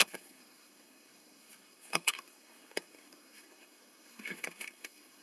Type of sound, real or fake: fake